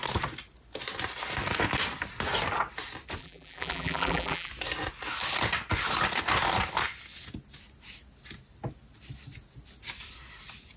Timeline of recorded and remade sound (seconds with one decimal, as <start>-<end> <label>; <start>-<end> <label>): 0.0-3.2 recorded; 3.2-4.5 remade; 4.5-10.8 recorded